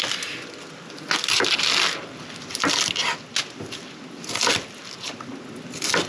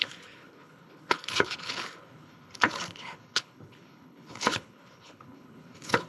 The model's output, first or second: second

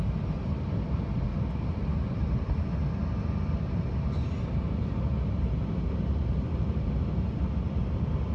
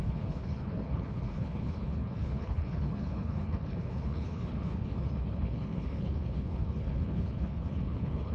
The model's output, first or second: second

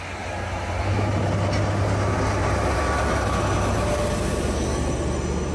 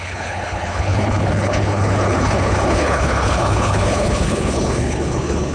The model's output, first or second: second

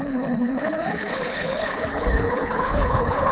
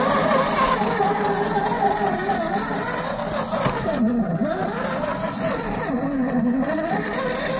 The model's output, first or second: first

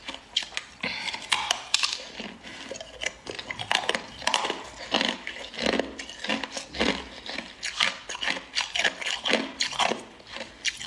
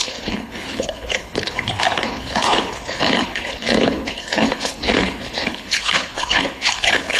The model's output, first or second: second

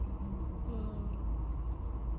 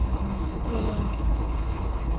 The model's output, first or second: second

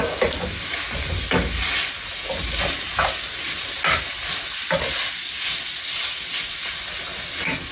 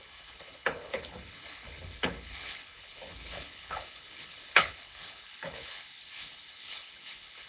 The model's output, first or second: second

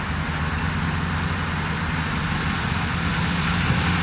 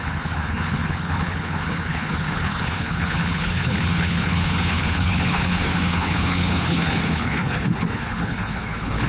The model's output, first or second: second